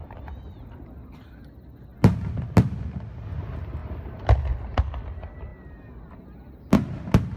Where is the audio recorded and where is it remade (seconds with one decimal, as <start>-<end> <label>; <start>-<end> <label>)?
0.0-1.3 remade; 1.3-7.4 recorded